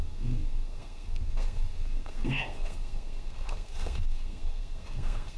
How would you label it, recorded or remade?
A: remade